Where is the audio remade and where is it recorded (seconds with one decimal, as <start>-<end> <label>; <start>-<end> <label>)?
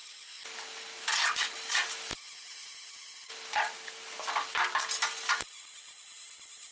0.0-6.7 recorded